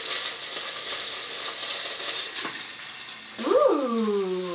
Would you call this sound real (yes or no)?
yes